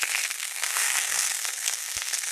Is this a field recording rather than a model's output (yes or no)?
no